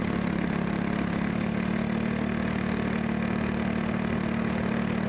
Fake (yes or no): no